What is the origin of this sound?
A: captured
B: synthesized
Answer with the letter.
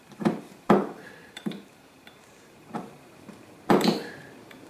B